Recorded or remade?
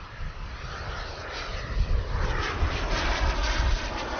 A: recorded